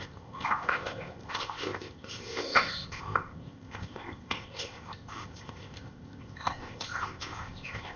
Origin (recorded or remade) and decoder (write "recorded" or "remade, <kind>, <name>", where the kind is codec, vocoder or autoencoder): remade, codec, ZipCodec